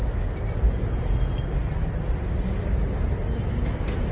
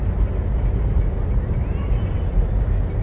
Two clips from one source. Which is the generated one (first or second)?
second